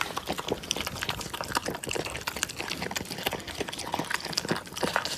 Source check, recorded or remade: recorded